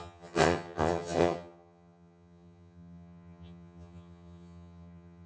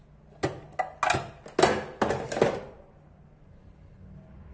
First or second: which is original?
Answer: second